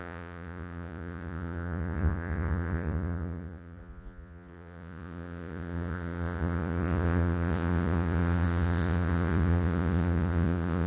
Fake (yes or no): yes